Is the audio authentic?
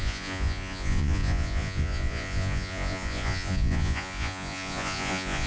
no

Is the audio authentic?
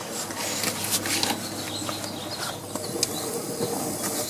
yes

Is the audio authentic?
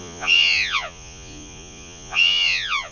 no